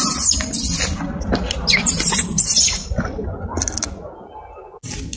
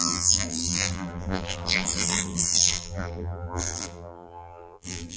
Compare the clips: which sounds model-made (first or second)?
second